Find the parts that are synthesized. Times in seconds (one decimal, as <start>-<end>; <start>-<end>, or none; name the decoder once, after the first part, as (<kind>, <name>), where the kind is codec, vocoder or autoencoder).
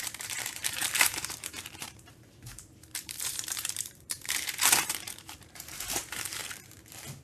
0.0-6.4 (vocoder, BigVGAN v2)